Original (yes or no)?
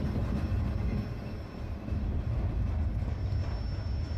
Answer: yes